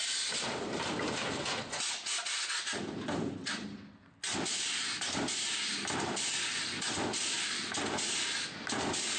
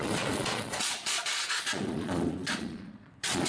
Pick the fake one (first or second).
second